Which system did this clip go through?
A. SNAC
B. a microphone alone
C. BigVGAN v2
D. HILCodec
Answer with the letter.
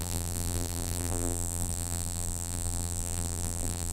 C